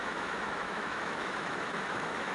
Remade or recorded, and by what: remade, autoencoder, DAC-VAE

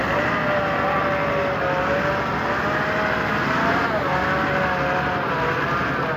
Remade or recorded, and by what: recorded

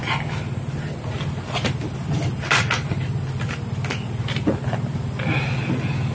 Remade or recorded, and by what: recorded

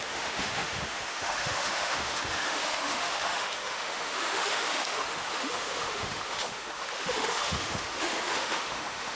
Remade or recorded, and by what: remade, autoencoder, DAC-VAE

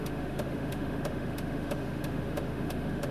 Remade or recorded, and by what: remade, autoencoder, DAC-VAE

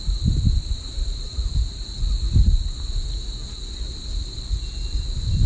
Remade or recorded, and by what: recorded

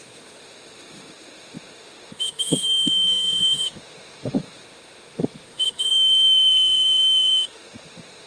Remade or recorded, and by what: remade, autoencoder, DAC-VAE